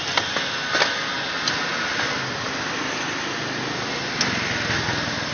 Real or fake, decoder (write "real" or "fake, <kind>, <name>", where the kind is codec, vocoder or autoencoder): real